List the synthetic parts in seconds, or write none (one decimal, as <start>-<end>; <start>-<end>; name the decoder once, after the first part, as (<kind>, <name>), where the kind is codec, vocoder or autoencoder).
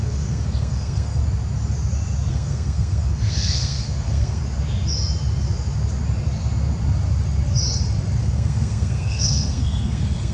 0.0-1.2 (codec, SNAC); 2.3-4.4; 8.2-10.3